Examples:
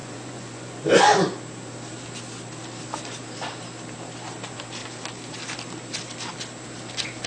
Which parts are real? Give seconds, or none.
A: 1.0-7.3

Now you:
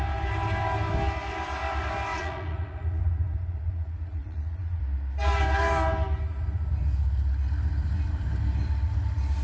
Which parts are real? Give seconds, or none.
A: 0.0-2.1; 4.8-9.4

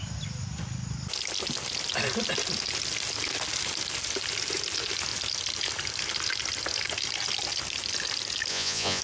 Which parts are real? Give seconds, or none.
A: 0.0-8.5

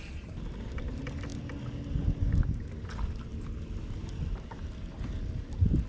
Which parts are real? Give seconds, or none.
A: 0.0-5.9

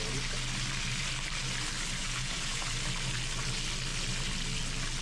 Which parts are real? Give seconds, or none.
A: 0.0-2.0; 2.7-5.0

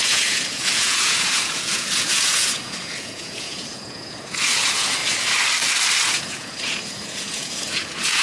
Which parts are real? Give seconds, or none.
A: 5.0-6.0